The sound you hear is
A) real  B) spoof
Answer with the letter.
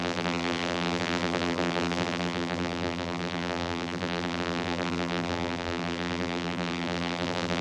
B